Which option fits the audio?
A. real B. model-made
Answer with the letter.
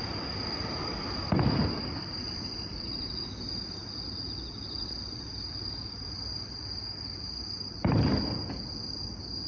A